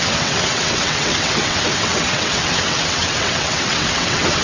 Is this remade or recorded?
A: remade